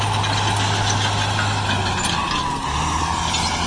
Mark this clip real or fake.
real